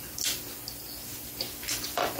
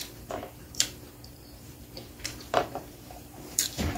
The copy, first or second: second